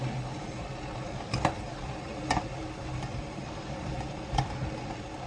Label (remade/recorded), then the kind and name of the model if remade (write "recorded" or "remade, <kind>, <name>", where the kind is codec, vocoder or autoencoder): remade, vocoder, BigVGAN v2